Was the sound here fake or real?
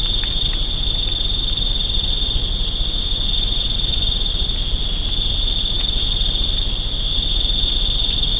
real